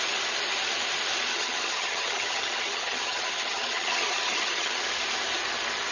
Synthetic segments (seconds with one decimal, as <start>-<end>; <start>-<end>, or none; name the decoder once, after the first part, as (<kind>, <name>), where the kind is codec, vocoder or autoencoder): 1.3-4.8 (vocoder, HiFi-GAN)